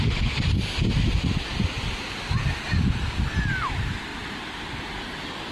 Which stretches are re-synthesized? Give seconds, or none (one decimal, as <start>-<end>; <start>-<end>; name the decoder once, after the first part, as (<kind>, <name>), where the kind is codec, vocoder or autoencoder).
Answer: none

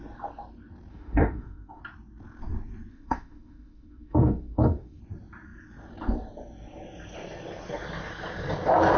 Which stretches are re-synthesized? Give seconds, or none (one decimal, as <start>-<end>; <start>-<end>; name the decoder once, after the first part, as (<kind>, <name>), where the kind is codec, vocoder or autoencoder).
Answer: 0.9-1.8 (autoencoder, DAC-VAE); 2.9-5.0

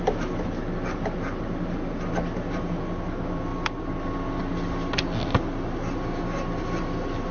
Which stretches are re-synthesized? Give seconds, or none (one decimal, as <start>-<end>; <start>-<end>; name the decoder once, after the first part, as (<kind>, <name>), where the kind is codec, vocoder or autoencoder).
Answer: none

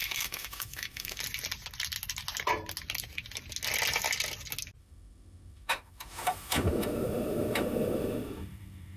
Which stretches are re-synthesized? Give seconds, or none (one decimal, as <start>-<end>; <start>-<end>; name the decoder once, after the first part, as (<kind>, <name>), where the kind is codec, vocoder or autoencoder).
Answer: 0.0-1.2 (autoencoder, DAC-VAE); 4.8-9.0

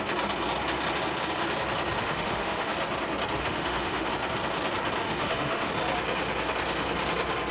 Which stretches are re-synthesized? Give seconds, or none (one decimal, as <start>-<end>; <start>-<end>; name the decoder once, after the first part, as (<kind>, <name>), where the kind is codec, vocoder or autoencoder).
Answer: 2.0-2.7 (autoencoder, DAC-VAE); 3.4-4.1; 5.0-5.7

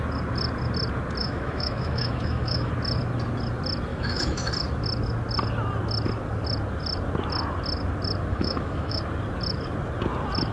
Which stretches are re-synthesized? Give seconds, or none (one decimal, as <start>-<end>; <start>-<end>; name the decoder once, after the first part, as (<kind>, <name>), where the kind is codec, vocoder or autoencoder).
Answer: 1.2-2.7 (autoencoder, DAC-VAE); 3.9-4.5; 8.3-9.0

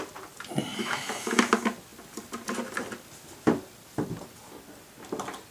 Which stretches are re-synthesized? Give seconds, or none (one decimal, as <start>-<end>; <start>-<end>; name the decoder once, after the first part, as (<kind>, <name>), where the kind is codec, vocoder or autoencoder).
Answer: 0.8-1.4 (autoencoder, DAC-VAE)

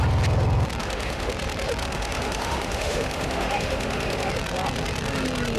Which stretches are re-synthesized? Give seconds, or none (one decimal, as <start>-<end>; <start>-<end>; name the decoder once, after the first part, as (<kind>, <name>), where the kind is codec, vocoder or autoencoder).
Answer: 0.8-1.3 (autoencoder, DAC-VAE); 1.8-4.3